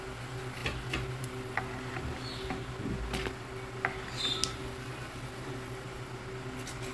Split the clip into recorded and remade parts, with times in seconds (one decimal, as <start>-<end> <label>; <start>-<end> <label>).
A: 0.0-6.9 recorded